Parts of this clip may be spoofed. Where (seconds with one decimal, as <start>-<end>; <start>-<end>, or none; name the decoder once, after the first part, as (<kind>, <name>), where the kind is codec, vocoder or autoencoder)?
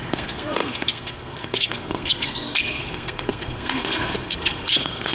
0.0-5.1 (codec, SNAC)